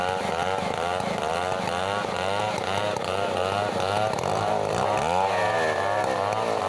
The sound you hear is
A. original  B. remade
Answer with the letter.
A